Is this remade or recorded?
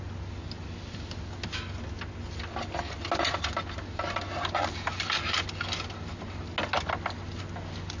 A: recorded